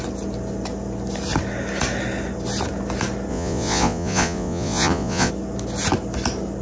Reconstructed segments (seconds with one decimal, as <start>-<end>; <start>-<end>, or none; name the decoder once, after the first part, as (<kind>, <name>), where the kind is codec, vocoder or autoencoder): 3.3-5.3 (vocoder, Vocos)